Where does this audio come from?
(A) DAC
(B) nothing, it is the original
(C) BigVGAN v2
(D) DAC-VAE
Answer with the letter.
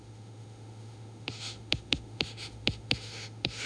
D